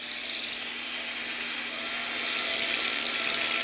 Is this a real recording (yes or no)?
yes